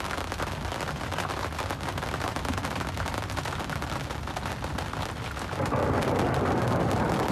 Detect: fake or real real